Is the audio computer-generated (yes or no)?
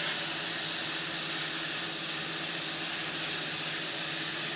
no